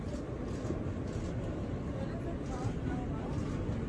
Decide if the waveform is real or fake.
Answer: real